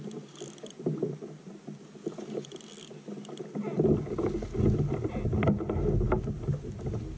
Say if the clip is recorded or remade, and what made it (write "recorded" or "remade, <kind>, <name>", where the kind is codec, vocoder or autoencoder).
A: recorded